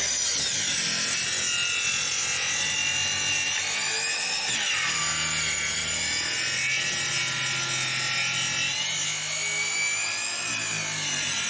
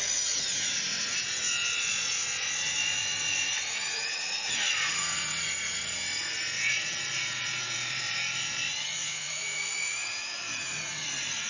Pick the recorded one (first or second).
first